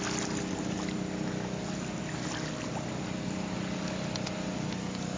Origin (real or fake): real